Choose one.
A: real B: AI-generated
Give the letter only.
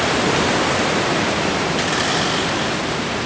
A